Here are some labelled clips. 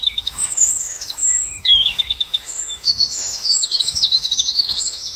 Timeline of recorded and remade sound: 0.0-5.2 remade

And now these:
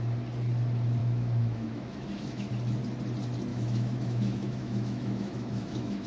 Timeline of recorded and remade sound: 0.0-1.0 recorded; 1.0-2.5 remade; 2.5-3.5 recorded; 3.5-6.1 remade

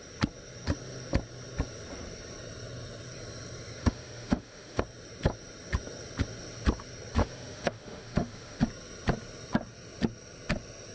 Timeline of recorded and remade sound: 0.0-3.8 recorded; 3.8-4.8 remade; 4.8-7.2 recorded; 7.2-8.6 remade; 8.6-10.9 recorded

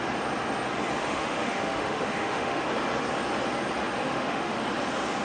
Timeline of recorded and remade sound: 0.0-1.0 recorded; 1.0-2.6 remade; 2.6-4.0 recorded; 4.0-4.6 remade; 4.6-5.2 recorded

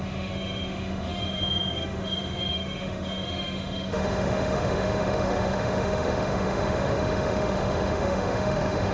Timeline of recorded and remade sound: 0.0-8.9 remade

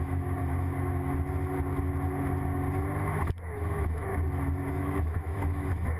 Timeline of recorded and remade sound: 0.0-0.4 remade; 0.4-3.2 recorded; 3.2-4.1 remade; 4.1-4.7 recorded; 4.7-6.0 remade